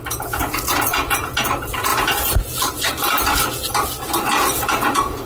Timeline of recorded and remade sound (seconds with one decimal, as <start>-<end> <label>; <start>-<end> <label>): 0.0-1.9 remade; 1.9-4.5 recorded; 4.5-5.3 remade